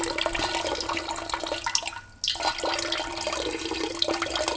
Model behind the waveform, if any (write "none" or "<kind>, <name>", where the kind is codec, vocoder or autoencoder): none